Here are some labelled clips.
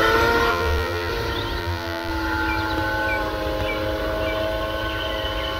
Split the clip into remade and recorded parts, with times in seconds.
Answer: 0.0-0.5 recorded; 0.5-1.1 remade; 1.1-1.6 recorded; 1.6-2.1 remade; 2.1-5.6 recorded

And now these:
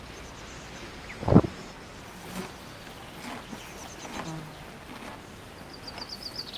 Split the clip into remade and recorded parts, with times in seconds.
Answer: 0.0-1.9 recorded; 1.9-2.4 remade; 2.4-6.6 recorded

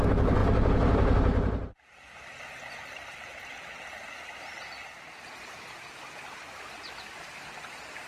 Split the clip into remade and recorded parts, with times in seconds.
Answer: 0.0-8.1 recorded